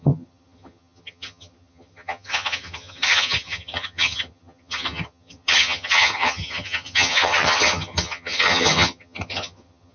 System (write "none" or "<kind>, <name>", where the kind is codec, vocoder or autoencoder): vocoder, HiFi-GAN